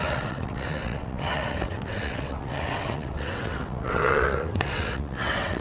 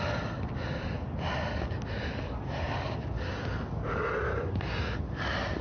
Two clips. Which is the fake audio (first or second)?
first